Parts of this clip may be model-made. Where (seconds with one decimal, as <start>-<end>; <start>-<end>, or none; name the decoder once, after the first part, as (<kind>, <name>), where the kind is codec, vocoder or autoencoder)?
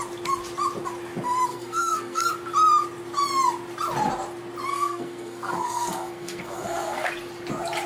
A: 1.5-2.3 (codec, SNAC); 4.7-7.1